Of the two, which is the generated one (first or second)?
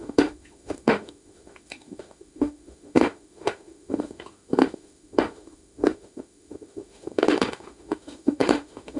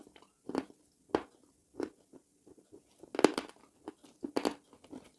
first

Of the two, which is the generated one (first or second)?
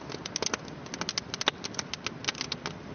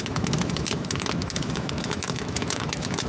second